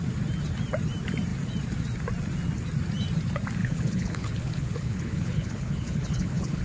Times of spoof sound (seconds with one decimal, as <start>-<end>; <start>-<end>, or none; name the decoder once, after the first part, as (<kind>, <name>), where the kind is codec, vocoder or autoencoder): 3.6-6.6 (codec, HILCodec)